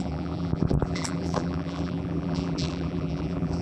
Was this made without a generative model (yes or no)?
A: no